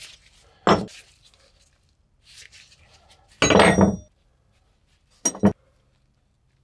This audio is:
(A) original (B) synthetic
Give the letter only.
A